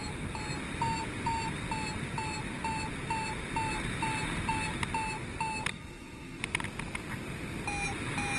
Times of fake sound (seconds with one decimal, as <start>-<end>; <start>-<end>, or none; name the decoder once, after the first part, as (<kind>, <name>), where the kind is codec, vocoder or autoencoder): 5.7-6.4 (codec, SNAC)